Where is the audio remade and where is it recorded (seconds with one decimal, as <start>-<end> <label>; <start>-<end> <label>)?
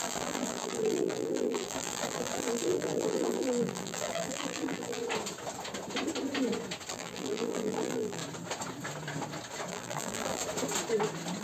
0.0-5.0 remade; 5.0-6.9 recorded; 6.9-8.2 remade; 8.2-9.7 recorded; 9.7-10.4 remade; 10.4-11.4 recorded